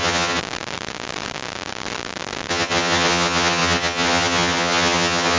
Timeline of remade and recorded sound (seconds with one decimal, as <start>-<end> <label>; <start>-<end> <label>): 0.0-0.4 remade; 0.4-2.5 recorded; 2.5-5.4 remade